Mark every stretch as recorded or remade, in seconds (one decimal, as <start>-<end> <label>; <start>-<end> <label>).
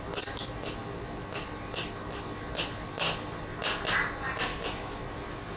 0.0-4.5 recorded; 4.5-5.0 remade; 5.0-5.6 recorded